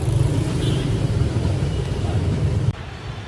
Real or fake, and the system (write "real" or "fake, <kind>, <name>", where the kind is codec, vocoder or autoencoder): fake, vocoder, BigVGAN v2